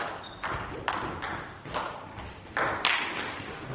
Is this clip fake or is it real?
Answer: real